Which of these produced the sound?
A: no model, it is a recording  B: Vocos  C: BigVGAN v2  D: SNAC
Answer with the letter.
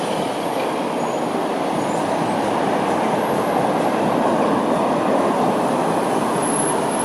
A